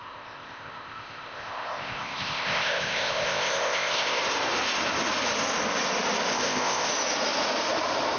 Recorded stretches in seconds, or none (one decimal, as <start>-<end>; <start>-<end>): 4.2-6.3; 6.9-8.2